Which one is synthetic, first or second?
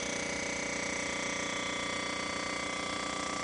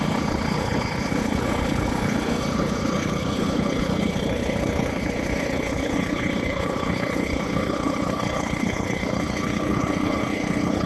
second